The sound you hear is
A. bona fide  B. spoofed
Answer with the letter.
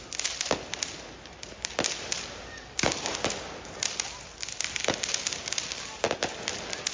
A